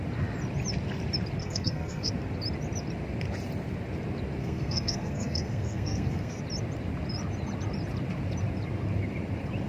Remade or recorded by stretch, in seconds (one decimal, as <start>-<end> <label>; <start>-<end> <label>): 0.0-1.4 recorded; 1.4-2.1 remade; 2.1-4.4 recorded; 4.4-6.4 remade; 6.4-9.7 recorded

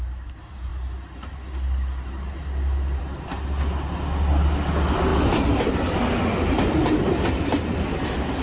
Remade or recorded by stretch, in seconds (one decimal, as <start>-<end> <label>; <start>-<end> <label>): 0.0-8.4 recorded

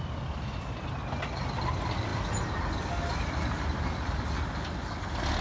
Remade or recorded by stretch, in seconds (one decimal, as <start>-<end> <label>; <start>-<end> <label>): 0.0-5.4 recorded